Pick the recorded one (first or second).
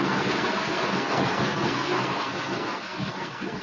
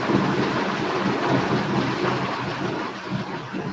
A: second